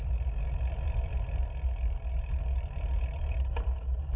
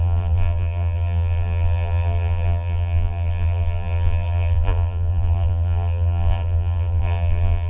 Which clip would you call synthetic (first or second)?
second